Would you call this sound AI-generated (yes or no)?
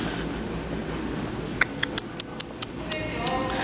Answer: no